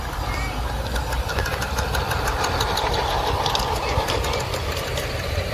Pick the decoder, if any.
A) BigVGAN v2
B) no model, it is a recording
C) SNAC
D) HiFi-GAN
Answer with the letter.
B